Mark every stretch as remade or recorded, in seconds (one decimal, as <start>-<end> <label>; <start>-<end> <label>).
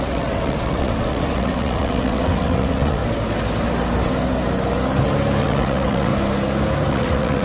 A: 0.0-3.0 remade; 3.0-5.4 recorded; 5.4-6.1 remade; 6.1-6.9 recorded; 6.9-7.4 remade